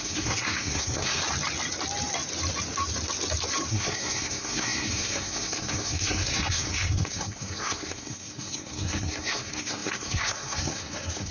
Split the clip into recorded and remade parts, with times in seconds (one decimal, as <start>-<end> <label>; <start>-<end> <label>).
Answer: 0.0-1.2 remade; 1.2-3.7 recorded; 3.7-11.3 remade